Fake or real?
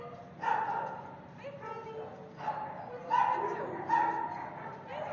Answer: real